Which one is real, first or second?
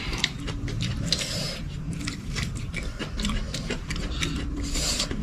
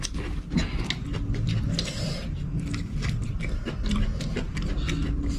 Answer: second